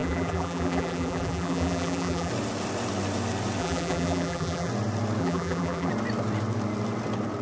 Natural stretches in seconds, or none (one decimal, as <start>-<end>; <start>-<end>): 2.3-3.6; 4.7-5.2; 5.9-7.4